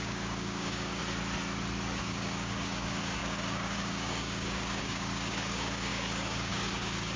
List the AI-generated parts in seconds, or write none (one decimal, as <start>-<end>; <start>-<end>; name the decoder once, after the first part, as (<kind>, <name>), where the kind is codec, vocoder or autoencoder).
0.0-1.0 (codec, DAC); 2.0-7.2